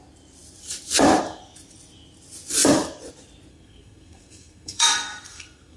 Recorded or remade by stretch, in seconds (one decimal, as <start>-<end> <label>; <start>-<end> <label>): 0.0-3.5 recorded; 3.5-5.8 remade